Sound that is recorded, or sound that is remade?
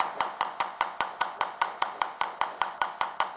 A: remade